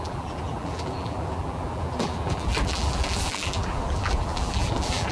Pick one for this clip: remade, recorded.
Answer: remade